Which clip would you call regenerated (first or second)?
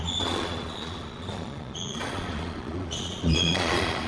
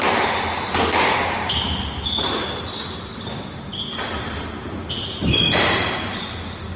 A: first